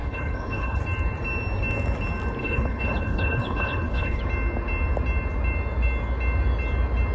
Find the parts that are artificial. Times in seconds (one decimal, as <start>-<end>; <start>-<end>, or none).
0.0-0.8; 2.4-4.2